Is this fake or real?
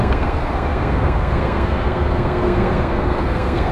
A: fake